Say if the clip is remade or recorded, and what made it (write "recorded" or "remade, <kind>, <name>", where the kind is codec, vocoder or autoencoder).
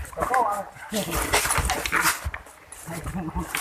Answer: recorded